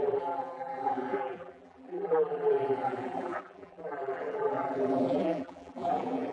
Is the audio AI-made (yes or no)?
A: yes